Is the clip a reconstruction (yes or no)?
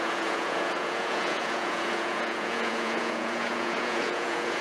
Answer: yes